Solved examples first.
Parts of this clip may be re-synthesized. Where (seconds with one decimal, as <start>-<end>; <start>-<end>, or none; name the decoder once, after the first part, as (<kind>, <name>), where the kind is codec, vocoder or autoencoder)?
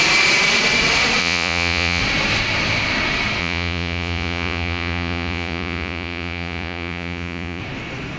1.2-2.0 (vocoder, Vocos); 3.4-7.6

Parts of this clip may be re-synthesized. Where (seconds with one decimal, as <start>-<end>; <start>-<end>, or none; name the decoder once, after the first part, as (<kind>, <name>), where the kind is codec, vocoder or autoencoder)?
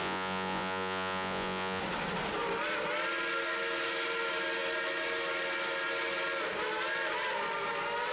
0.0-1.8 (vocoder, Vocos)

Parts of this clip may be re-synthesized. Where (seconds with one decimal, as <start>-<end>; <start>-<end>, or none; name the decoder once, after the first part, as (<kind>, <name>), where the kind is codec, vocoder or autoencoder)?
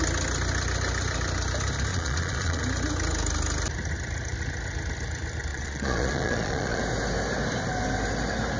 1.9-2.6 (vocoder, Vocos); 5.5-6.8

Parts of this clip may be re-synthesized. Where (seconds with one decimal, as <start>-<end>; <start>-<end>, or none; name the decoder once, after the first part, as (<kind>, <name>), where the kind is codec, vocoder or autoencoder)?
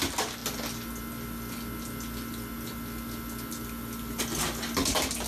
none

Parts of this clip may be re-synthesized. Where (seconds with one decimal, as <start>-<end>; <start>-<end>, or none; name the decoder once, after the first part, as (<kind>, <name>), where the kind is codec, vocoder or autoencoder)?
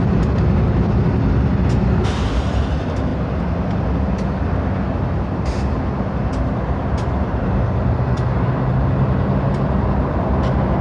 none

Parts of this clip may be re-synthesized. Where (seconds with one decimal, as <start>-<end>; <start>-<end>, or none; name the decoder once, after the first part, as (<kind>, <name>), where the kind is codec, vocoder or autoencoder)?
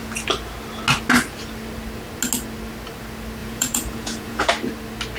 3.4-4.5 (vocoder, Vocos)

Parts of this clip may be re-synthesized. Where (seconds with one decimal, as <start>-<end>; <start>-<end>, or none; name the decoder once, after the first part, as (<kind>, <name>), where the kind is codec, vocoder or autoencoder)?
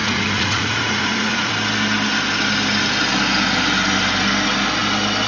0.0-1.5 (vocoder, Vocos)